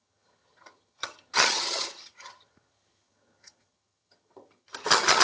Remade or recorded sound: remade